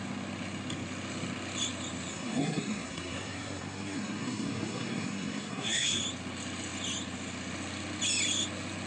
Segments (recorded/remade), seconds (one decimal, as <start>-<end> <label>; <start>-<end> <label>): 0.0-2.1 recorded; 2.1-6.0 remade; 6.0-8.9 recorded